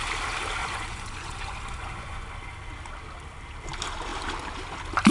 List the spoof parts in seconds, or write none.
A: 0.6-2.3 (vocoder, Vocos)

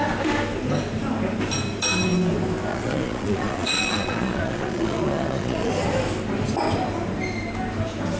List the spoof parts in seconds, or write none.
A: 2.7-5.7 (vocoder, Vocos)

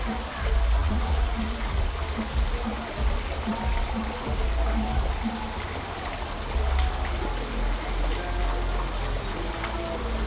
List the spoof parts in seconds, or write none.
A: 0.8-1.8 (vocoder, Vocos)

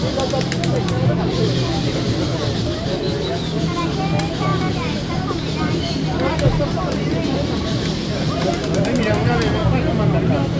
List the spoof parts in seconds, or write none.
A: none

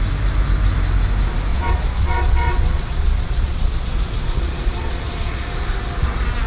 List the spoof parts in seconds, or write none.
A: 1.5-5.4 (vocoder, Vocos)

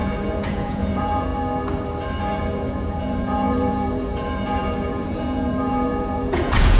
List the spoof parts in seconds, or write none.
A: 0.0-1.3 (vocoder, Vocos); 2.4-6.8